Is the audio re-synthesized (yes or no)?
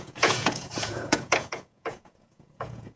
yes